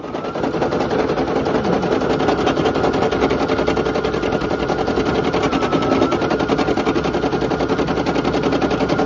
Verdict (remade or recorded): recorded